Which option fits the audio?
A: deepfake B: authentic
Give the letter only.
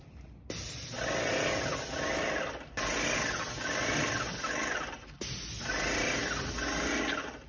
B